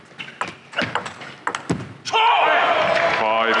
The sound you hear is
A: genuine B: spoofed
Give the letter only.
A